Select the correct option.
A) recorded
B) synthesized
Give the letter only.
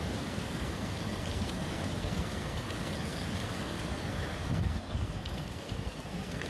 B